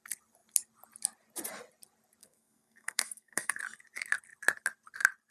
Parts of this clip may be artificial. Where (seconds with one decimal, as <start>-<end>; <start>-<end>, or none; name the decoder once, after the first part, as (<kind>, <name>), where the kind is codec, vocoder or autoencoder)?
2.2-3.6 (codec, SNAC)